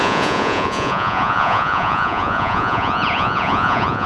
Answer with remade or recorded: remade